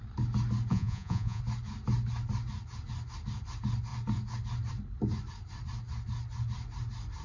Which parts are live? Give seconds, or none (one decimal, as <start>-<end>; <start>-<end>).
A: 0.0-0.7; 1.4-7.2